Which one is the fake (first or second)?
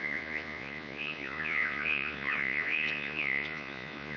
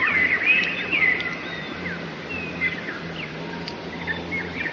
first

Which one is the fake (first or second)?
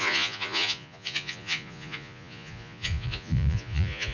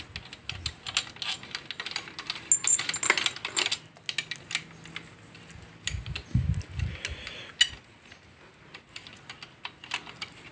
first